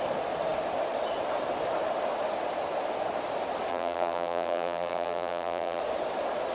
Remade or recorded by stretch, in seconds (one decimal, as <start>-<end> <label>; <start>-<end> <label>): 0.0-3.7 recorded; 3.7-5.8 remade; 5.8-6.5 recorded